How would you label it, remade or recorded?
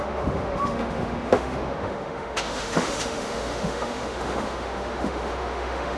remade